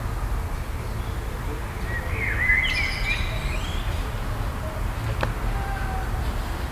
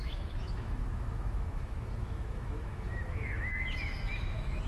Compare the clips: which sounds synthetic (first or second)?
second